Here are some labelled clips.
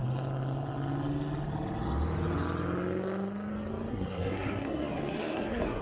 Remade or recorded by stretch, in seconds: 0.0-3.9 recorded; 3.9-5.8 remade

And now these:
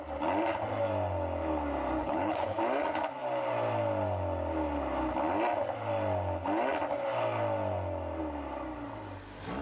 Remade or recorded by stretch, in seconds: 0.0-2.0 recorded; 2.0-2.6 remade; 2.6-9.6 recorded

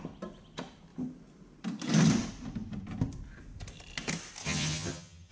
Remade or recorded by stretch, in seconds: 0.0-4.4 recorded; 4.4-5.3 remade

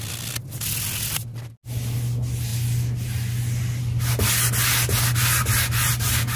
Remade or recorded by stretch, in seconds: 0.0-6.4 recorded

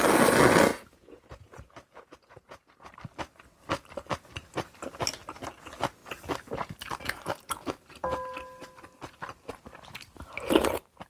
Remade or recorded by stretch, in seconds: 0.0-0.7 recorded; 0.7-2.9 remade; 2.9-11.1 recorded

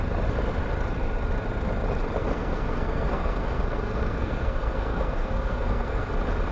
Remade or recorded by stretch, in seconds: 0.0-2.2 recorded; 2.2-6.1 remade; 6.1-6.5 recorded

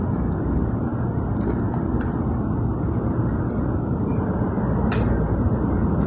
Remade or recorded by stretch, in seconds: 0.0-6.1 recorded

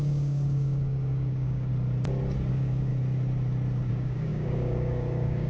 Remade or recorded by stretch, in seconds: 0.0-1.7 remade; 1.7-2.5 recorded; 2.5-2.9 remade; 2.9-3.9 recorded; 3.9-5.5 remade